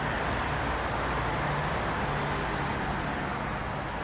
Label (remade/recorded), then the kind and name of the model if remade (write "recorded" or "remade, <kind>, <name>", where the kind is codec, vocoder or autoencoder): recorded